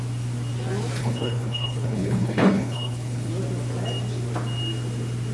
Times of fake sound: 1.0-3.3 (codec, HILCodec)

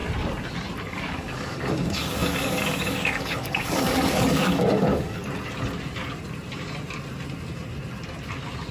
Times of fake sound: 0.8-5.2 (codec, DAC)

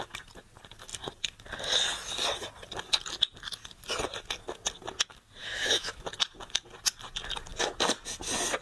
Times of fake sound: 5.4-6.0 (autoencoder, DAC-VAE)